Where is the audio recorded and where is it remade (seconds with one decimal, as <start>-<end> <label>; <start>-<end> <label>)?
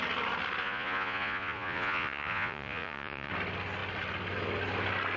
0.0-0.6 recorded; 0.6-3.3 remade; 3.3-5.2 recorded